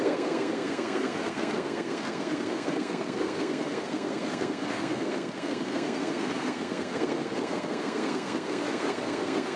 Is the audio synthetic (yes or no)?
yes